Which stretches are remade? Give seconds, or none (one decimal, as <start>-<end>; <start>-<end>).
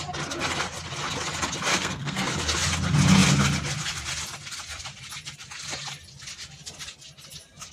1.7-2.3